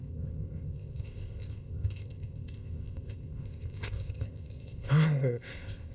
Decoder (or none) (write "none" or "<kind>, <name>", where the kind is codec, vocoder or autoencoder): codec, ZipCodec